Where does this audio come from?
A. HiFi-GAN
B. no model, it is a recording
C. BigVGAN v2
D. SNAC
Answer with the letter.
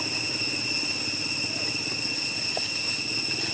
B